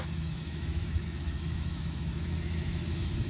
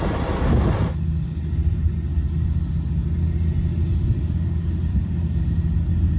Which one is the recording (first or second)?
second